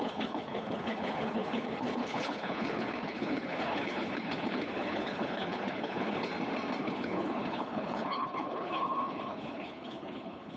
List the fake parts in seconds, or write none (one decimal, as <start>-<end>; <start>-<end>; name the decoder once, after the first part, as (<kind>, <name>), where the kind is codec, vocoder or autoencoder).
0.0-6.3 (codec, HILCodec); 6.8-10.6